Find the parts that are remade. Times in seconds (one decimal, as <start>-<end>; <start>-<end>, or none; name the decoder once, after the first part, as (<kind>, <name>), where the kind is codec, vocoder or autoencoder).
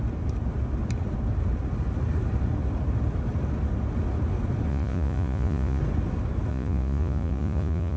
4.7-5.8 (vocoder, Vocos); 6.5-8.0